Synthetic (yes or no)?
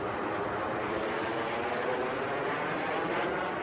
no